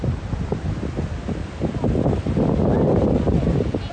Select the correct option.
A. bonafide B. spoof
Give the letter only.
A